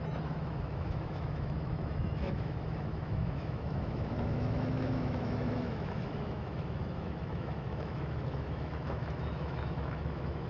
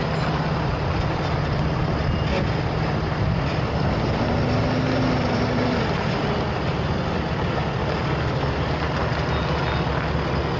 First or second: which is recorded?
second